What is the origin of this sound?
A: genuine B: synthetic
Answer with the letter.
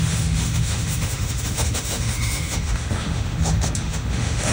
B